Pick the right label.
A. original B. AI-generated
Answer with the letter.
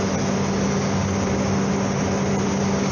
A